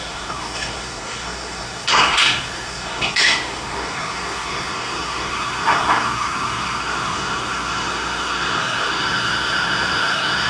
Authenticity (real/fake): fake